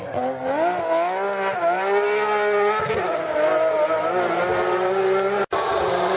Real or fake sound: real